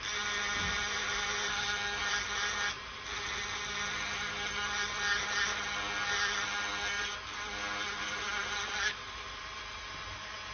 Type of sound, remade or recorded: recorded